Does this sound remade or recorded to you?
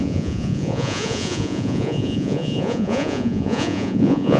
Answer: remade